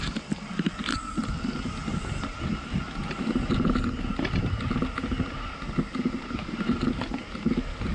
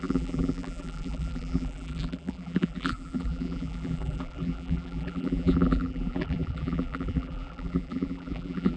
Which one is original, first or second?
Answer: first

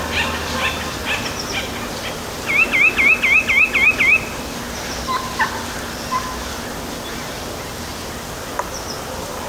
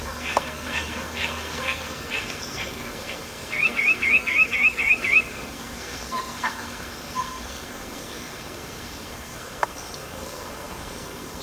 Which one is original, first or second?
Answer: first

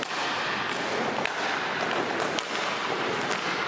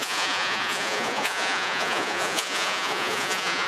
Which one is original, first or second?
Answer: first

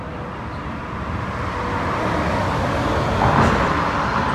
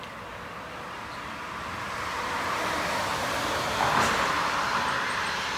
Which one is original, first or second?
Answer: first